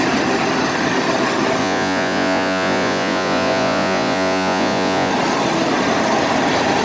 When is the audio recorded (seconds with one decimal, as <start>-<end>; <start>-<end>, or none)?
0.0-1.6; 5.1-6.8